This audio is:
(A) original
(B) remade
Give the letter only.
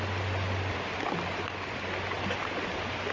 A